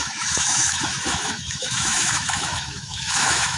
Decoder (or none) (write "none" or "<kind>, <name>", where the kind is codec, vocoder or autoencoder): autoencoder, DAC-VAE